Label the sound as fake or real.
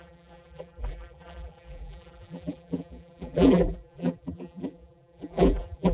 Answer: fake